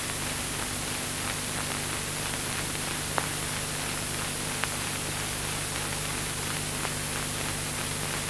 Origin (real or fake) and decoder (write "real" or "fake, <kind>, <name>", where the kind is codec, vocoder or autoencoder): real